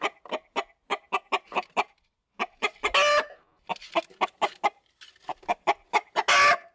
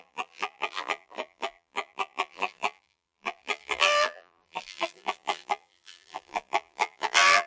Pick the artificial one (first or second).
second